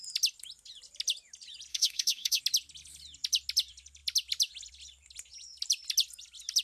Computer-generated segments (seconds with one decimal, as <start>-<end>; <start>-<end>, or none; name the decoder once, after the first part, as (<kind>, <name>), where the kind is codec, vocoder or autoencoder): 1.7-2.4 (autoencoder, DAC-VAE)